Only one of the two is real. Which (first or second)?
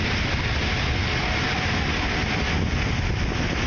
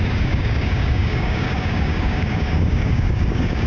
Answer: first